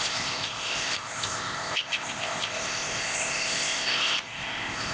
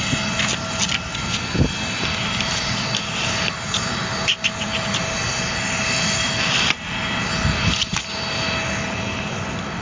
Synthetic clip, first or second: first